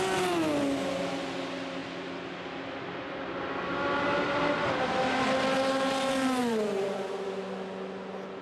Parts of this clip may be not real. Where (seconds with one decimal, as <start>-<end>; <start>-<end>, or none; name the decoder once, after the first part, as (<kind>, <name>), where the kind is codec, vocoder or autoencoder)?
6.4-7.0 (vocoder, BigVGAN v2)